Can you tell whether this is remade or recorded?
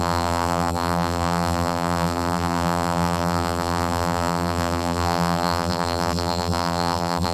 remade